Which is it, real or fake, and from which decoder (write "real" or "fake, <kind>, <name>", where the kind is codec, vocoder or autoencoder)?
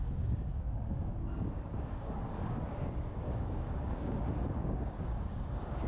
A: fake, codec, DAC